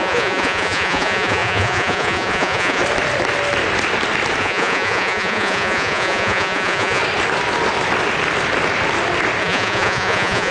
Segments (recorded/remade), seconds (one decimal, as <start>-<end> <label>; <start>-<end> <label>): 0.0-2.8 remade; 2.8-4.4 recorded; 4.4-7.0 remade; 7.0-9.4 recorded; 9.4-10.5 remade